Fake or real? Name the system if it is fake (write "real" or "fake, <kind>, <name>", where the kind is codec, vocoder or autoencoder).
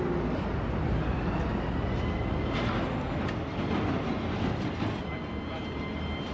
real